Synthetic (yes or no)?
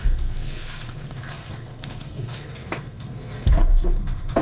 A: yes